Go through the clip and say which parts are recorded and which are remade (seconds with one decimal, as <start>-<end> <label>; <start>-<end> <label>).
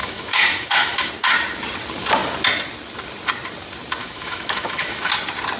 0.0-1.1 remade; 1.1-4.0 recorded; 4.0-5.1 remade; 5.1-5.6 recorded